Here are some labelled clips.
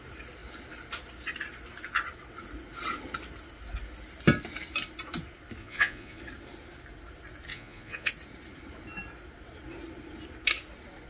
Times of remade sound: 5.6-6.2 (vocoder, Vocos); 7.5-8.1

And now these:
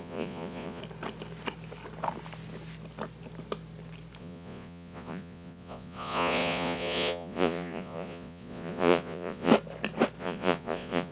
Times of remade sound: 0.0-0.8 (vocoder, Vocos); 4.2-9.5; 10.2-11.1

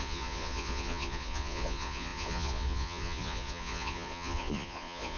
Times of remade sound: 0.0-5.2 (vocoder, Vocos)

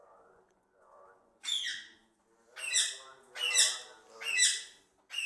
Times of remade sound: 0.0-2.2 (vocoder, Vocos)

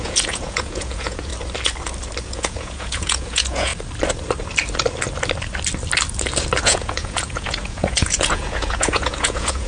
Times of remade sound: 0.0-1.3 (vocoder, Vocos); 2.2-3.7; 6.6-9.7

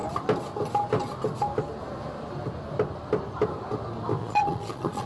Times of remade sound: 4.2-5.1 (vocoder, Vocos)